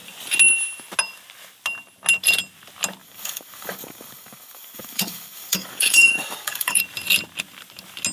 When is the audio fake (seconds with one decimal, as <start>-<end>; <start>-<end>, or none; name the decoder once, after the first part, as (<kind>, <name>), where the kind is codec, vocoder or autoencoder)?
3.0-6.8 (codec, DAC)

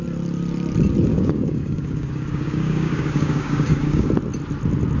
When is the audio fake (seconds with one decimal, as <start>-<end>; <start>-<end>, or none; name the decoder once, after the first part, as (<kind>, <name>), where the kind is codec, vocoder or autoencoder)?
1.1-4.1 (codec, DAC)